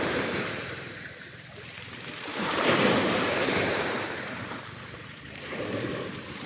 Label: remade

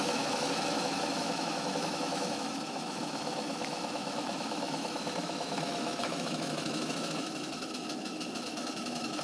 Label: remade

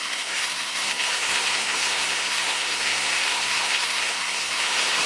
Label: remade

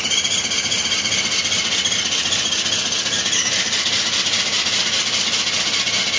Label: recorded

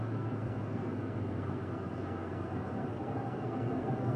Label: remade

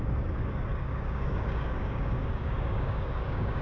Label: remade